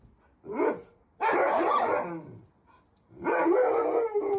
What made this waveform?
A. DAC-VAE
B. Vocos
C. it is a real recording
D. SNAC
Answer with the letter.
C